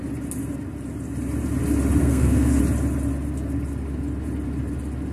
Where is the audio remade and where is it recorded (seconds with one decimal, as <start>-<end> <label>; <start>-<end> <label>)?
0.0-2.0 recorded; 2.0-2.6 remade; 2.6-5.1 recorded